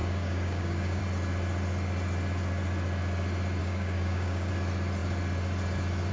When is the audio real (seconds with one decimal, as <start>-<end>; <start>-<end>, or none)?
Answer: 1.0-3.6; 4.5-6.1